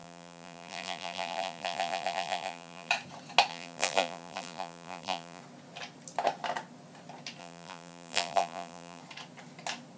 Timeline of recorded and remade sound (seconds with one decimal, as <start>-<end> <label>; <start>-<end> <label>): 0.0-2.9 remade; 2.9-3.5 recorded; 3.5-5.4 remade; 5.4-7.4 recorded; 7.4-9.0 remade; 9.0-10.0 recorded